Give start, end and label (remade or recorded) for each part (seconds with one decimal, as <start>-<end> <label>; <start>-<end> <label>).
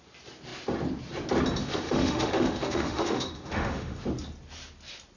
0.0-1.6 recorded; 1.6-4.0 remade; 4.0-5.2 recorded